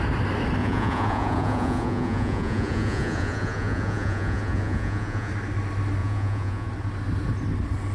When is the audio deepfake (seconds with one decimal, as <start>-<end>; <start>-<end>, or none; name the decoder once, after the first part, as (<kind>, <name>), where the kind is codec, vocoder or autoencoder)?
0.6-5.3 (vocoder, Vocos); 6.0-6.7